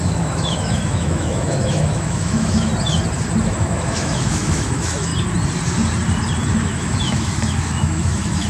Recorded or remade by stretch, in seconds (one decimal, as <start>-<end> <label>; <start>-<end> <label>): 0.0-2.7 remade; 2.7-3.4 recorded; 3.4-5.1 remade; 5.1-6.5 recorded; 6.5-8.5 remade